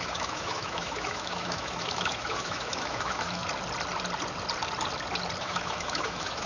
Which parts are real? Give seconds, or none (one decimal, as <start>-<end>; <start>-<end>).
3.4-5.4